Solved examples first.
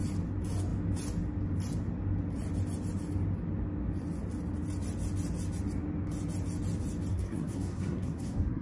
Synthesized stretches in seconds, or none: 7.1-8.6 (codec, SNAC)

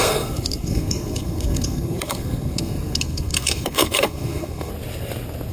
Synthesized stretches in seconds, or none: 0.0-4.7 (codec, SNAC)

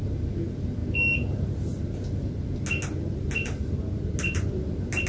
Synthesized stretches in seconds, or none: none